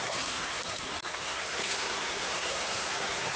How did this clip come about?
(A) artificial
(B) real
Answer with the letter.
A